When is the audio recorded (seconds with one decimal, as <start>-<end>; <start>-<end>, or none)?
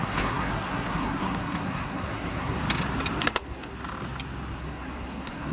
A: 2.6-3.2; 3.7-4.6